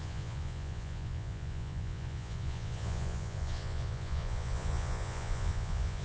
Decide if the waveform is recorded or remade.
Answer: remade